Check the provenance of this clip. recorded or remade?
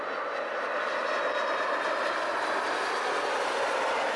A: recorded